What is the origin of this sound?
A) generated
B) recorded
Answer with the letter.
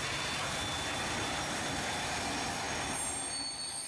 B